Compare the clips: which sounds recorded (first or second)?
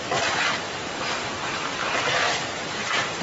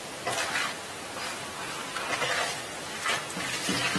second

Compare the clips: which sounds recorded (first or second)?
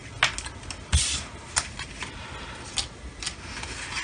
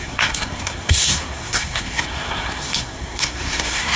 first